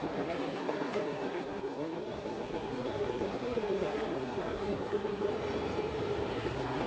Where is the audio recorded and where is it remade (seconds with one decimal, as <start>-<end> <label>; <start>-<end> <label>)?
0.0-5.3 remade; 5.3-6.3 recorded; 6.3-6.9 remade